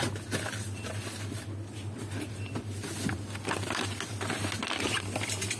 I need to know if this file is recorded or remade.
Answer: recorded